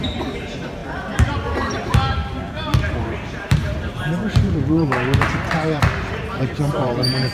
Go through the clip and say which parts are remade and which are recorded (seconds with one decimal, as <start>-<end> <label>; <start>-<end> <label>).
0.0-2.2 remade; 2.2-2.9 recorded; 2.9-7.3 remade

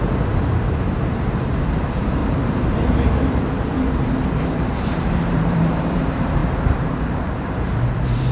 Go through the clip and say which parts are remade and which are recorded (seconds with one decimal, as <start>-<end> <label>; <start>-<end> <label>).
0.0-8.3 remade

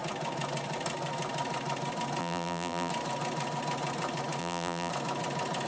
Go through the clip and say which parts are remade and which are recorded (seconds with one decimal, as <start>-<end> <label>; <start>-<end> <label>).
0.0-2.2 recorded; 2.2-2.9 remade; 2.9-4.4 recorded; 4.4-4.9 remade; 4.9-5.7 recorded

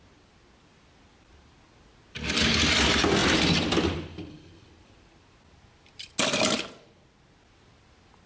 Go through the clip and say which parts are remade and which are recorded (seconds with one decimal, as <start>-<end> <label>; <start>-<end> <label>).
0.0-3.2 recorded; 3.2-5.1 remade; 5.1-8.3 recorded

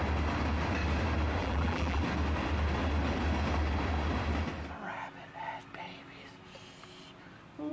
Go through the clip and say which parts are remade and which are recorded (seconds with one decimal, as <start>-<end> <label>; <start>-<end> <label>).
0.0-1.4 recorded; 1.4-2.0 remade; 2.0-7.7 recorded

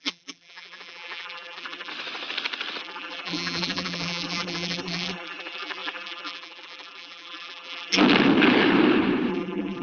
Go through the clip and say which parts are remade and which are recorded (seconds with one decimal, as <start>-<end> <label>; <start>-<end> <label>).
0.0-1.9 remade; 1.9-2.8 recorded; 2.8-8.0 remade; 8.0-9.3 recorded; 9.3-9.8 remade

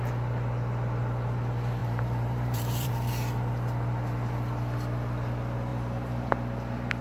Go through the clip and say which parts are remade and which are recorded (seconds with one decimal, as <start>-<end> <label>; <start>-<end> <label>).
0.0-1.8 recorded; 1.8-2.9 remade; 2.9-5.7 recorded; 5.7-6.3 remade; 6.3-7.0 recorded